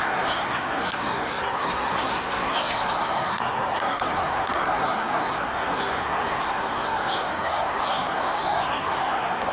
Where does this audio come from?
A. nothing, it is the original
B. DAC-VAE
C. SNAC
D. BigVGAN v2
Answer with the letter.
C